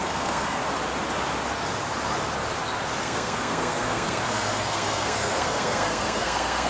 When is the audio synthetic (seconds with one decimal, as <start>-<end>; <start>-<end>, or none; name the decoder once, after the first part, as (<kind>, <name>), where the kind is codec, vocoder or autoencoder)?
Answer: 0.0-0.6 (codec, SNAC); 3.0-6.7